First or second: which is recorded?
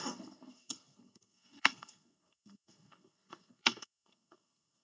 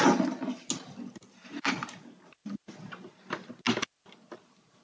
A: second